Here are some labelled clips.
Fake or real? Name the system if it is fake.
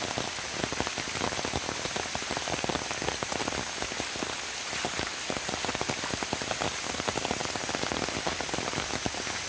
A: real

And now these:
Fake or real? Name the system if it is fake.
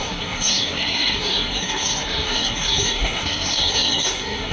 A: fake, codec, SNAC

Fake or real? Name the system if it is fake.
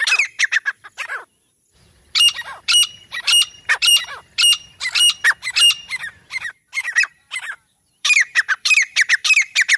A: fake, vocoder, BigVGAN v2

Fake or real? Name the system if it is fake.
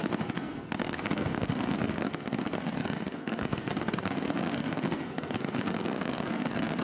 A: fake, codec, SNAC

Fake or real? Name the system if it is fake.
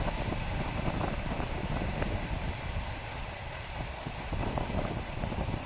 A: fake, vocoder, BigVGAN v2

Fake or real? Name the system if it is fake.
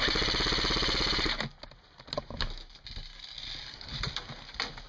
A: real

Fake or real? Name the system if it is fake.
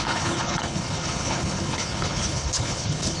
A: fake, codec, HILCodec